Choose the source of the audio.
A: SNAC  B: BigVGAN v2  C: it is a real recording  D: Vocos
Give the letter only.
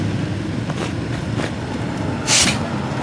C